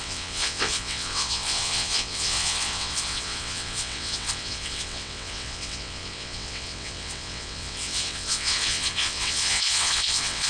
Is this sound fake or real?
fake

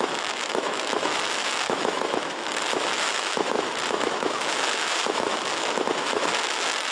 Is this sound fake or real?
fake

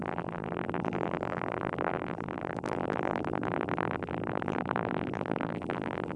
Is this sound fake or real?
fake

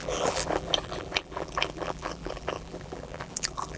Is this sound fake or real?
fake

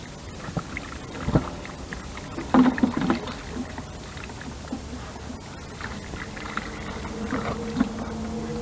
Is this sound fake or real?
real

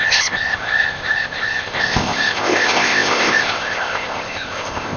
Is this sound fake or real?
fake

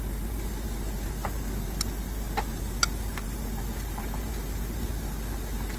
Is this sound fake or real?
real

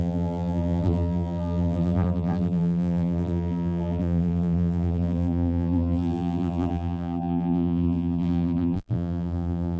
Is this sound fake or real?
fake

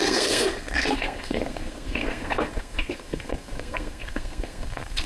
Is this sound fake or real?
fake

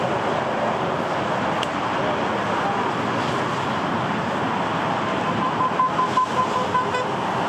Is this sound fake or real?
real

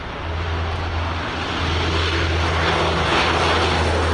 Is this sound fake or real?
real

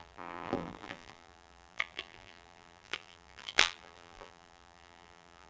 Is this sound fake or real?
fake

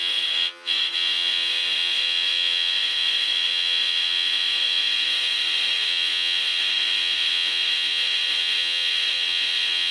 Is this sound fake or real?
fake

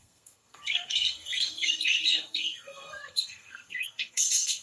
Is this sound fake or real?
fake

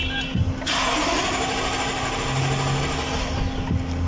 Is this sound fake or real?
real